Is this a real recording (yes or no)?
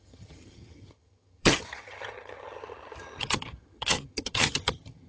no